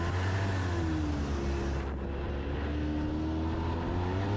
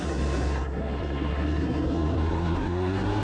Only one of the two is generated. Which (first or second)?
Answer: second